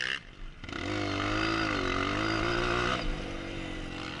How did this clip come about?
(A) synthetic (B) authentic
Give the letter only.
B